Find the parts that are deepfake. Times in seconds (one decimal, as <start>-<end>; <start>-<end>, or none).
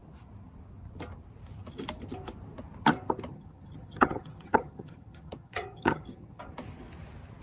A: 3.3-6.4